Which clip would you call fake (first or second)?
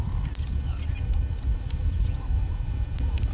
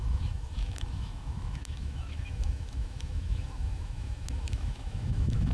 second